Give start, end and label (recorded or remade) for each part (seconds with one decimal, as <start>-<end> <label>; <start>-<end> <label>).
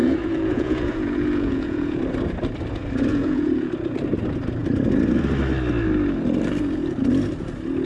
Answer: 0.0-2.0 remade; 2.0-3.1 recorded; 3.1-3.7 remade; 3.7-7.9 recorded